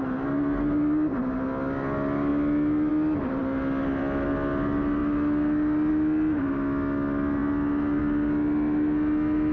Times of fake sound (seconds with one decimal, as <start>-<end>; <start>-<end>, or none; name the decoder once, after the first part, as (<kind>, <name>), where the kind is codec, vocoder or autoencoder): none